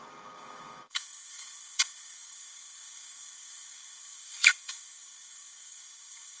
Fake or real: fake